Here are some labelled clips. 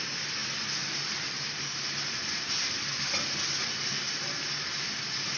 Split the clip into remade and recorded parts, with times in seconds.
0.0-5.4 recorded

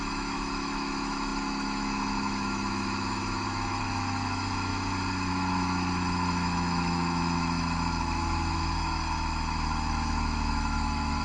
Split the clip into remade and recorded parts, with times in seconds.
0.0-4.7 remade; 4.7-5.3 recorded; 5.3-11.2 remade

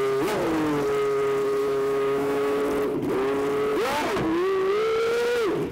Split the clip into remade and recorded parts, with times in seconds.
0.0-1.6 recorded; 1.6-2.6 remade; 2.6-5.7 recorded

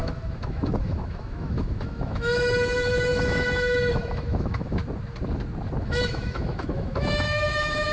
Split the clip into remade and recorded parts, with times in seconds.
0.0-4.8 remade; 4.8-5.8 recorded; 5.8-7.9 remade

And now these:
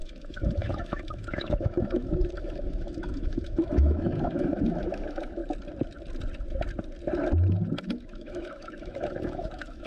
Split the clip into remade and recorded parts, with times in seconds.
0.0-5.4 remade; 5.4-7.8 recorded; 7.8-9.9 remade

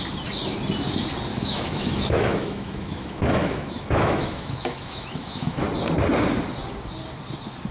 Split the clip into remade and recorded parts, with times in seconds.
0.0-1.3 recorded; 1.3-5.7 remade; 5.7-7.7 recorded

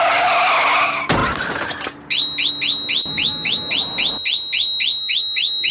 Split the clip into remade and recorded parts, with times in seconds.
0.0-3.1 recorded; 3.1-3.7 remade; 3.7-5.0 recorded; 5.0-5.7 remade

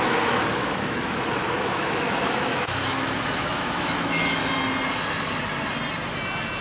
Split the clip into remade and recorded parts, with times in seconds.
0.0-4.4 remade; 4.4-6.6 recorded